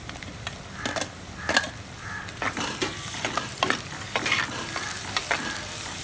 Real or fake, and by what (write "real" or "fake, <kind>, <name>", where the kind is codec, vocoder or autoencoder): real